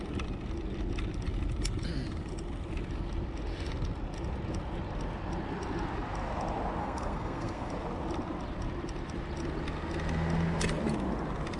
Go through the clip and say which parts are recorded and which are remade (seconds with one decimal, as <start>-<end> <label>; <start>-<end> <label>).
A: 0.0-6.8 recorded; 6.8-7.7 remade; 7.7-11.6 recorded